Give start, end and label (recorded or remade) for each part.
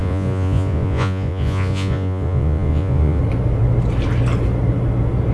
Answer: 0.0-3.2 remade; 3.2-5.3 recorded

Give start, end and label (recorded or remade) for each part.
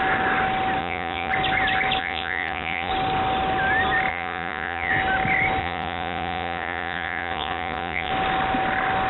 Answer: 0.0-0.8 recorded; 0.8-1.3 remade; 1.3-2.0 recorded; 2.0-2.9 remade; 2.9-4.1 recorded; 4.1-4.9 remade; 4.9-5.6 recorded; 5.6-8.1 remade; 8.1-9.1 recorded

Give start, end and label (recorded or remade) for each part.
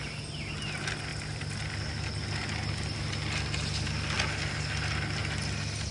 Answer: 0.0-5.9 recorded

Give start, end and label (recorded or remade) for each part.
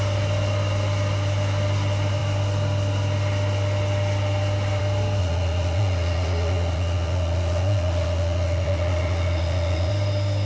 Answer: 0.0-5.2 recorded; 5.2-9.9 remade; 9.9-10.4 recorded